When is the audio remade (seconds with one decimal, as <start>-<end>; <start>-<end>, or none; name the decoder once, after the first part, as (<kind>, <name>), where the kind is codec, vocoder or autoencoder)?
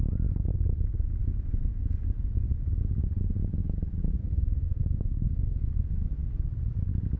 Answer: 4.2-5.6 (codec, SNAC)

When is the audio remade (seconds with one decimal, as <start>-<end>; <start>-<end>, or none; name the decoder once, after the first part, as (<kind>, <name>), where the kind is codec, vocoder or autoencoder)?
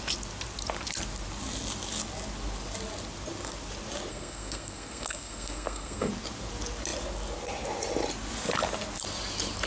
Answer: 4.1-6.1 (codec, SNAC)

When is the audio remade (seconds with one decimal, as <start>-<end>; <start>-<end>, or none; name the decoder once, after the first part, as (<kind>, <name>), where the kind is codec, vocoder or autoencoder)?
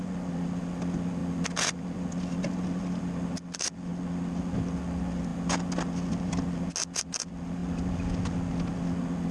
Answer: none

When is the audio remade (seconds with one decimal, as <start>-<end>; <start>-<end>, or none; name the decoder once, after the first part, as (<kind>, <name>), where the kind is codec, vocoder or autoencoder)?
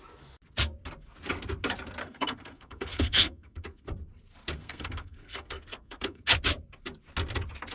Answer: 2.0-3.8 (codec, SNAC); 4.6-6.2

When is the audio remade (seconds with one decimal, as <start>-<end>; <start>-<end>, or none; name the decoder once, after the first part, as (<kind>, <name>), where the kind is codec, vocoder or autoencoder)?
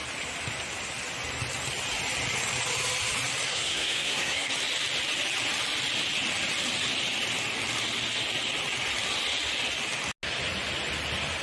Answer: 3.5-4.5 (codec, SNAC)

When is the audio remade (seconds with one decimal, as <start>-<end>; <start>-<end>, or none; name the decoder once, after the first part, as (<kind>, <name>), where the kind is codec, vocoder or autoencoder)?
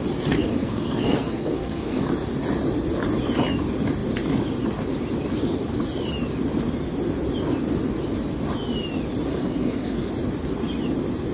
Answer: 0.4-2.1 (codec, SNAC); 9.3-10.1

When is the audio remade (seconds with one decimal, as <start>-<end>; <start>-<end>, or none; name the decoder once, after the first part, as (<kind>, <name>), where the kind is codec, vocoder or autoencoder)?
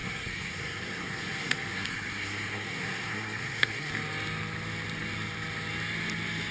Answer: 0.0-3.9 (codec, SNAC)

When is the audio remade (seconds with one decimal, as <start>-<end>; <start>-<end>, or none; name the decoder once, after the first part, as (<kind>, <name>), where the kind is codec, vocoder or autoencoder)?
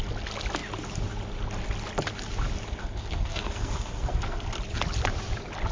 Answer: 2.8-4.5 (codec, SNAC)